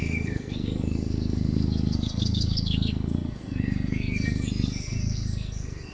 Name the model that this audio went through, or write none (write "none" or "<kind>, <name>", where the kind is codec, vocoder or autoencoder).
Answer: codec, SNAC